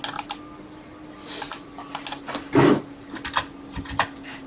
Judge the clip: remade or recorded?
recorded